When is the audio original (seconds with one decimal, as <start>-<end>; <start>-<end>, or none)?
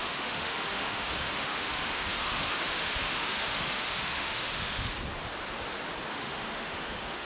4.9-6.1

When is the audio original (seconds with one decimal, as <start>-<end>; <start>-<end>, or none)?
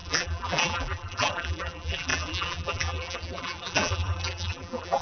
none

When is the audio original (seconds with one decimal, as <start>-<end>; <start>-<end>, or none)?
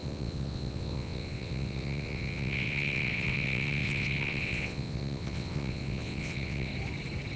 6.7-7.4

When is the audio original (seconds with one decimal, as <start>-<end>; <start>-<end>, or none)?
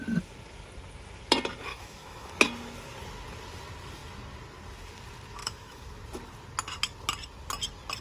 0.0-1.7; 2.3-5.4; 6.0-8.0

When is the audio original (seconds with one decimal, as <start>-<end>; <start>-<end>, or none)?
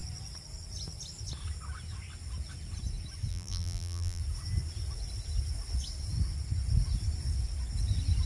0.0-3.3; 4.2-8.3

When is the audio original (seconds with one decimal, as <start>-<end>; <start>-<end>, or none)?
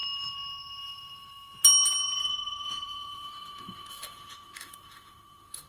1.6-2.2